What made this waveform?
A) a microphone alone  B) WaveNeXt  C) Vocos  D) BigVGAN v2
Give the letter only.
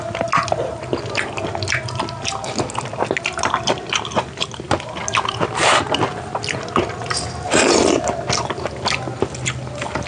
A